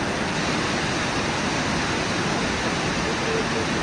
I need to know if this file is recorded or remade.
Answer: recorded